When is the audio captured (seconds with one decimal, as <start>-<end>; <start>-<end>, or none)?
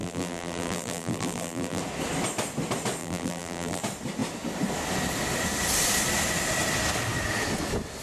1.8-3.0; 3.8-8.0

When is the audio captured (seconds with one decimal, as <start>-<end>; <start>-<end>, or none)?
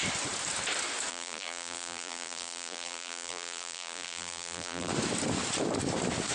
0.0-1.1; 4.9-6.3